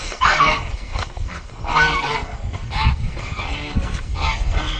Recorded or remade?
remade